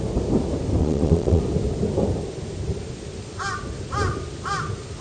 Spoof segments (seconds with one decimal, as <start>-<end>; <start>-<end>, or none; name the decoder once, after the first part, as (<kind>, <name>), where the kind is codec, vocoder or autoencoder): 0.8-1.4 (vocoder, Vocos)